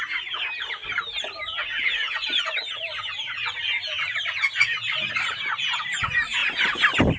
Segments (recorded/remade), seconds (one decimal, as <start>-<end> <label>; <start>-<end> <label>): 0.0-7.2 recorded